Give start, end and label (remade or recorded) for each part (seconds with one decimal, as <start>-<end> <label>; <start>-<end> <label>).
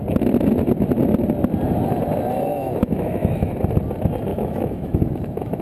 0.0-2.5 recorded; 2.5-3.5 remade; 3.5-4.3 recorded; 4.3-5.6 remade